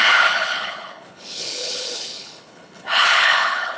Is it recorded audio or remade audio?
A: remade